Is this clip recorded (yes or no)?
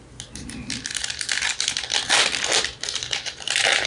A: yes